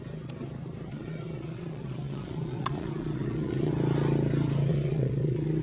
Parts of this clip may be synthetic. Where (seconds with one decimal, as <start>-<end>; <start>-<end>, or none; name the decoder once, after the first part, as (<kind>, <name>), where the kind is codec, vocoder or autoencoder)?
0.9-3.7 (vocoder, Vocos); 4.7-5.6